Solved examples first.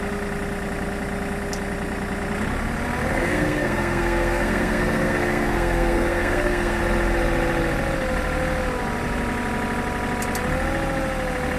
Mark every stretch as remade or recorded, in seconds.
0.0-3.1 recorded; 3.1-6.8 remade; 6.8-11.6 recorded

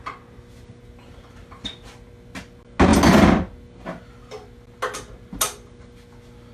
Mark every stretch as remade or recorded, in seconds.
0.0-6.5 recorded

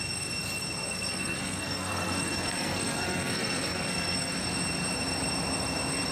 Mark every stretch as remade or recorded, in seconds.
0.0-0.9 recorded; 0.9-4.3 remade; 4.3-6.1 recorded

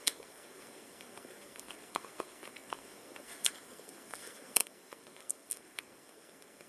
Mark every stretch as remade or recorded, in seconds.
0.0-6.7 remade